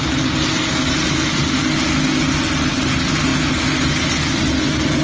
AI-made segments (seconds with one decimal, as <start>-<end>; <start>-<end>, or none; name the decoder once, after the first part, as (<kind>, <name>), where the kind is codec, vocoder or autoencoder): none